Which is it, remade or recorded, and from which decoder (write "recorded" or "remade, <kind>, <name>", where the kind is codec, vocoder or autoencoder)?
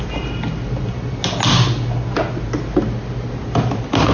recorded